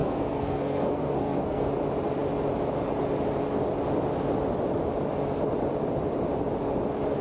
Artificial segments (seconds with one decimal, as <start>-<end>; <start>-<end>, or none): 0.0-1.7